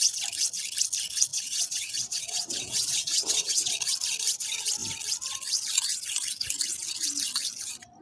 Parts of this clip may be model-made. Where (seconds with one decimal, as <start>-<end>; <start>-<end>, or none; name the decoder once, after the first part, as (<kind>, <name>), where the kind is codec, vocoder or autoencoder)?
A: 1.3-3.7 (vocoder, WaveNeXt)